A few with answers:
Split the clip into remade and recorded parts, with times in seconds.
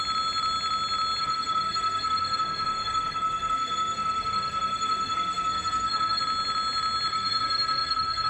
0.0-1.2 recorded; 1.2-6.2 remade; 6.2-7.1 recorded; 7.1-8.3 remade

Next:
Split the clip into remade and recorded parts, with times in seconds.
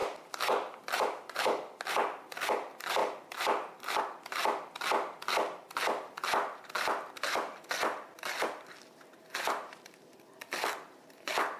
0.0-11.6 remade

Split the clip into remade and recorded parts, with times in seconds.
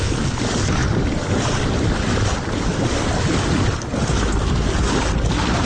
0.0-5.7 recorded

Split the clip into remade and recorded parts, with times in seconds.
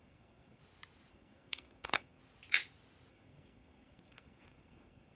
0.0-0.6 remade; 0.6-1.1 recorded; 1.1-2.2 remade; 2.2-3.1 recorded; 3.1-5.2 remade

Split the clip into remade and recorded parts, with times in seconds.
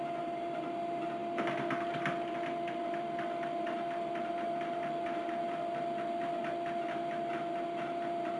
0.0-1.2 recorded; 1.2-5.4 remade; 5.4-8.4 recorded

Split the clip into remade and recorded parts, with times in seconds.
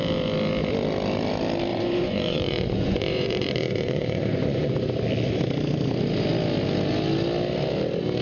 0.0-1.7 recorded; 1.7-4.7 remade; 4.7-8.2 recorded